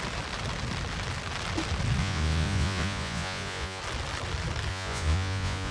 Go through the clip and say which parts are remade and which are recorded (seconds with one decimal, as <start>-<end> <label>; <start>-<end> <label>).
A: 0.0-2.0 recorded; 2.0-3.8 remade; 3.8-4.7 recorded; 4.7-5.7 remade